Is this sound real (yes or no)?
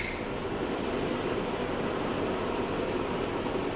no